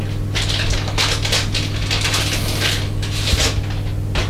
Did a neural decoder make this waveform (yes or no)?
no